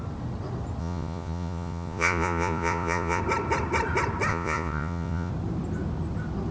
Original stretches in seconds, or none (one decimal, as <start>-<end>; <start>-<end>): 0.0-0.8; 3.2-4.3; 5.3-6.5